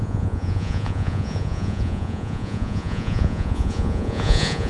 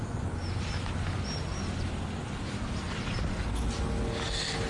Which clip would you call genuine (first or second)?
second